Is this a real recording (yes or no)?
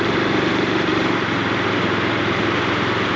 no